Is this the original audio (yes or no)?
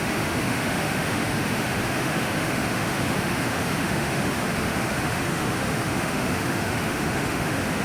no